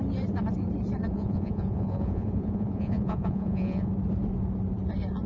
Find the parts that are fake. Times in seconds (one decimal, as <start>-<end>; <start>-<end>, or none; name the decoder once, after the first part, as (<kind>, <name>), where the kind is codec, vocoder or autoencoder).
1.1-3.9 (vocoder, Vocos)